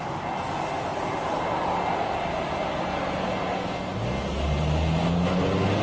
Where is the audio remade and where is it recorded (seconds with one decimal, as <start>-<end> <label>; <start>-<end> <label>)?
0.0-5.8 recorded